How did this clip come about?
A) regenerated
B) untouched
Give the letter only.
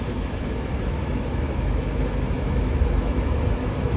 A